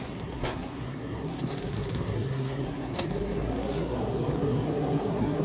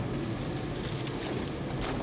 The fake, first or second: first